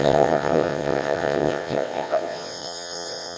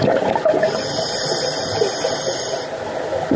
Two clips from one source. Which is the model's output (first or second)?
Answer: first